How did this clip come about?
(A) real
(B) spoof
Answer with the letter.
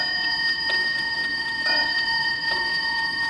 B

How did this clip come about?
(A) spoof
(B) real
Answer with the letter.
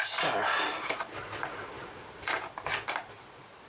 B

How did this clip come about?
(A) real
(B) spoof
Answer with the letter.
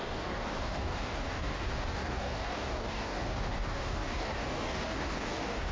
B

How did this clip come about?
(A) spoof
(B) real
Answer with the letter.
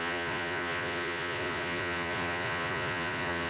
A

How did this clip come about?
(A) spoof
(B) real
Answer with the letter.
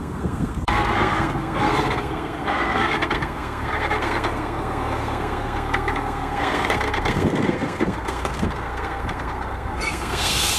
A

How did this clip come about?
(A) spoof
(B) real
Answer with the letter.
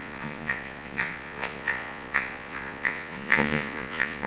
A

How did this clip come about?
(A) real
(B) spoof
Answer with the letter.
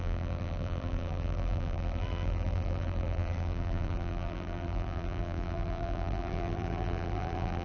B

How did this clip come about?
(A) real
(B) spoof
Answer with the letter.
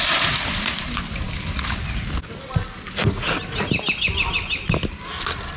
A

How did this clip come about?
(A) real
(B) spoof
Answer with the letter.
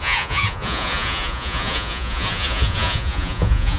B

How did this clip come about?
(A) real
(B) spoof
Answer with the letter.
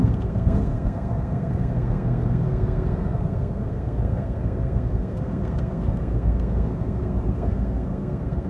B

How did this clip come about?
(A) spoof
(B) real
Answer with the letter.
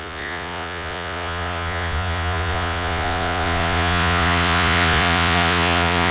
A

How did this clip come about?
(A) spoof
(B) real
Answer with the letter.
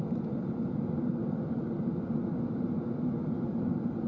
B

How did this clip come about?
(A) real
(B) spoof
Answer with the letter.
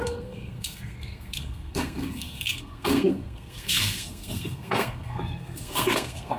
B